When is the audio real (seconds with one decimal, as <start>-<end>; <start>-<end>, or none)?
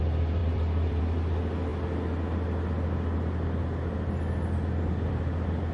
0.0-0.4; 1.0-5.7